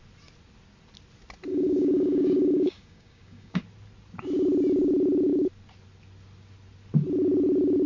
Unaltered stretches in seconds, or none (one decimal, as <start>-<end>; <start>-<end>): 0.0-1.5; 3.6-7.9